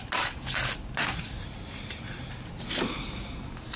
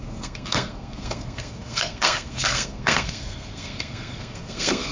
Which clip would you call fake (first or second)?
second